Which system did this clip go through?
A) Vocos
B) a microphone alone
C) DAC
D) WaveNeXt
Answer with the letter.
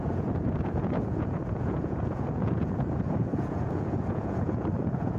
A